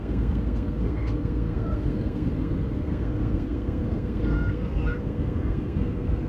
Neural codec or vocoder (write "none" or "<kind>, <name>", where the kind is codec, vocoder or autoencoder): codec, SNAC